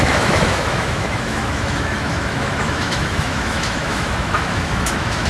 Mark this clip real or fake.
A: fake